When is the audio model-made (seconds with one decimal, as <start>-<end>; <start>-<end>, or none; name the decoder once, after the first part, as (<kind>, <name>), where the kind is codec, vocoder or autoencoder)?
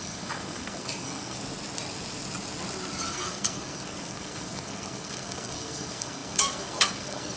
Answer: 0.0-1.4 (codec, SNAC); 3.1-7.4